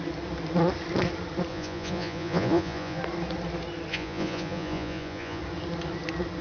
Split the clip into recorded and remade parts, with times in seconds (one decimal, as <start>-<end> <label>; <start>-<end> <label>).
0.0-1.5 recorded; 1.5-3.0 remade; 3.0-3.9 recorded; 3.9-5.4 remade; 5.4-6.4 recorded